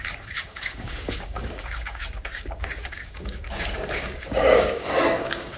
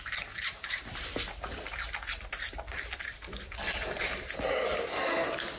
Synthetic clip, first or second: first